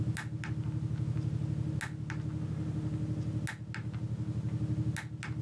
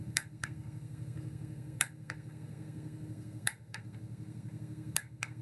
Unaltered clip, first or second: first